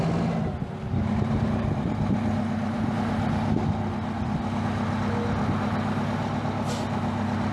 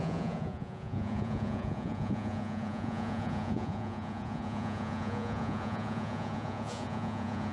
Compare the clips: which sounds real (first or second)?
first